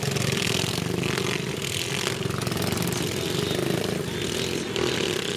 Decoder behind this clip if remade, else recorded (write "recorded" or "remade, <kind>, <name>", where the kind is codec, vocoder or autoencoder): recorded